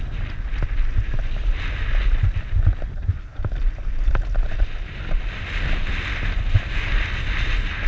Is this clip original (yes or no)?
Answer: yes